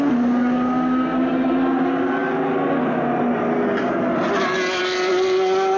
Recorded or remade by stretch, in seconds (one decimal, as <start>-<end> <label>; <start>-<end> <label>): 0.0-5.8 recorded